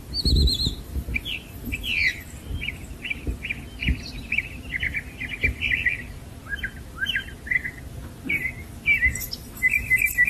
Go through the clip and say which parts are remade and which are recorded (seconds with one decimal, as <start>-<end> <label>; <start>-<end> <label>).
0.0-10.3 recorded